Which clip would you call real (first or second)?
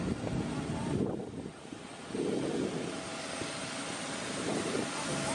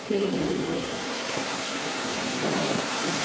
first